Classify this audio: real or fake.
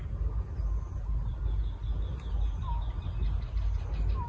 real